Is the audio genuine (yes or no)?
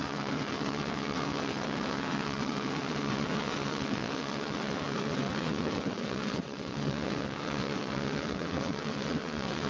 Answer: no